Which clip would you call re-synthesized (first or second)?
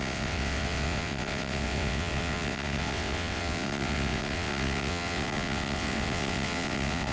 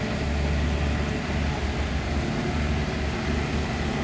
first